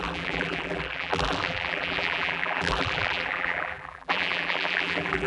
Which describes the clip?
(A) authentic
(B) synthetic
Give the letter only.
B